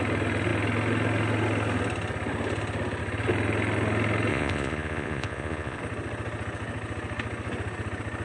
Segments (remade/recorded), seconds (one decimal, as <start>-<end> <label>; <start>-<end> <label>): 0.0-4.3 recorded; 4.3-5.8 remade; 5.8-8.2 recorded